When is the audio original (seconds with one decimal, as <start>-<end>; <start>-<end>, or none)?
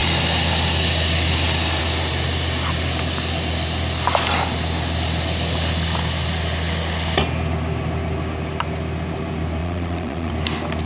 0.0-9.6; 10.3-10.9